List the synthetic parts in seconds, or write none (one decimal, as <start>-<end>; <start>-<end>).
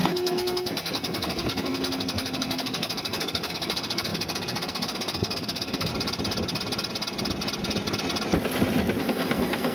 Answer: 0.0-5.9; 9.0-9.7